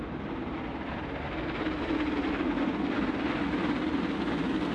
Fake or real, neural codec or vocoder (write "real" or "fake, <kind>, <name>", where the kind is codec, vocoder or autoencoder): real